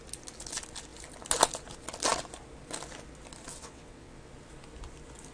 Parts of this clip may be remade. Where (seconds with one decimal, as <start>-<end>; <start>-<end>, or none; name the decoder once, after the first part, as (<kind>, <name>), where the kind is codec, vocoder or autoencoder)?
3.5-4.3 (vocoder, WaveNeXt)